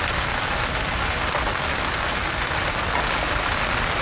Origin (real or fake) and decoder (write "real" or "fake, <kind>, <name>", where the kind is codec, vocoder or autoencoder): real